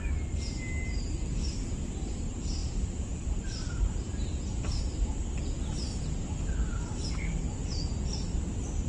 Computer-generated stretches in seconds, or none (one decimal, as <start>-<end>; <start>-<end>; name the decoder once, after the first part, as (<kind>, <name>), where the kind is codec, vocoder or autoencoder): 2.6-4.6 (vocoder, BigVGAN v2); 5.9-7.1